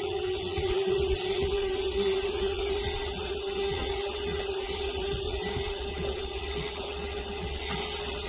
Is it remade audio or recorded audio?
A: remade